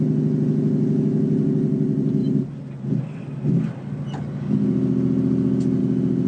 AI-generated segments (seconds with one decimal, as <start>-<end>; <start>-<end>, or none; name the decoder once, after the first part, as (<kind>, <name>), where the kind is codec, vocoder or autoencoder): none